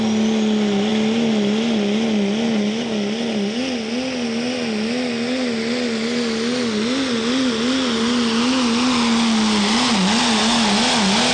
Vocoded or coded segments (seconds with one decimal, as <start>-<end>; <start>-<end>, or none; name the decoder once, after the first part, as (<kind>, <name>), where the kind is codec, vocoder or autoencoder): none